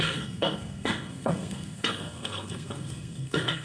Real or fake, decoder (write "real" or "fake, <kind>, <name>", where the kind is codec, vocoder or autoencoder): fake, codec, SNAC